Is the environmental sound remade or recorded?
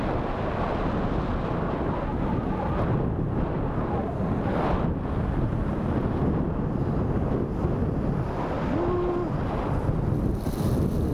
recorded